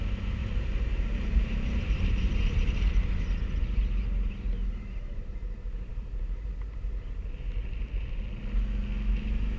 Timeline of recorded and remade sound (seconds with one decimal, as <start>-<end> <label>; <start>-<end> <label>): 0.0-0.4 recorded; 0.4-2.8 remade; 2.8-9.6 recorded